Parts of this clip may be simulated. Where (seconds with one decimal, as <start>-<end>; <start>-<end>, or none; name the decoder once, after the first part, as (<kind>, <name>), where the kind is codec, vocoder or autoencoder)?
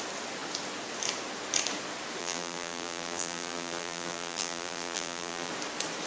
2.2-5.5 (vocoder, BigVGAN v2)